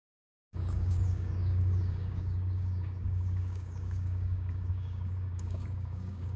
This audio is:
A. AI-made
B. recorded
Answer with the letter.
A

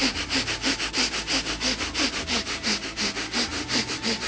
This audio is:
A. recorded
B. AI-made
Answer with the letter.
A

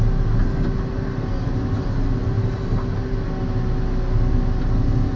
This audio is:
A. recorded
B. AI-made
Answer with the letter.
A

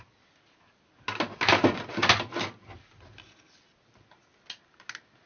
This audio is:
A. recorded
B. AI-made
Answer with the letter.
A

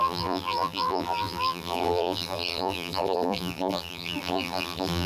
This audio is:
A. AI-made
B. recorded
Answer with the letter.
A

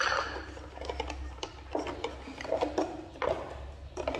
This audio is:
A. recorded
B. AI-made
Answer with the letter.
A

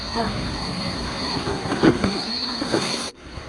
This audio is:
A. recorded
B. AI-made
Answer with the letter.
B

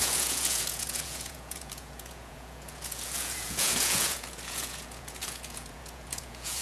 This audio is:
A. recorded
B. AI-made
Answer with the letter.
B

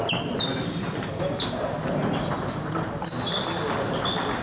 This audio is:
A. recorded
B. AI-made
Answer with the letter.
A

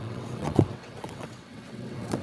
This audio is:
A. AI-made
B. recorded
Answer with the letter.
A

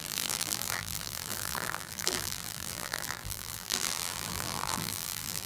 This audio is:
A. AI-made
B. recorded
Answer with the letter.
A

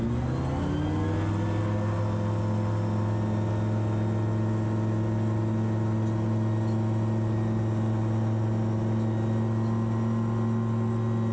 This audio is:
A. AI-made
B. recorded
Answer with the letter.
B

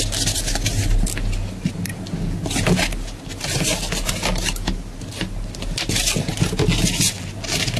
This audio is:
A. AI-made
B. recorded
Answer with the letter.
B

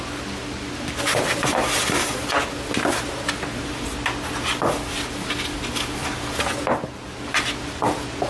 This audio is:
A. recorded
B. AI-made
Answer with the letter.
A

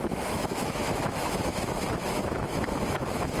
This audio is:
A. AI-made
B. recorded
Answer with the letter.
A